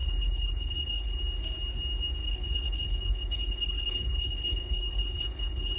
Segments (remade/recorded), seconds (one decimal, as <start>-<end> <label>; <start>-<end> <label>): 0.0-1.2 remade; 1.2-2.2 recorded; 2.2-5.8 remade